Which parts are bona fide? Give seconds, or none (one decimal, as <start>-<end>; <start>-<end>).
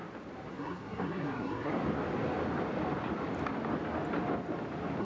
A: 0.0-0.5; 1.7-5.0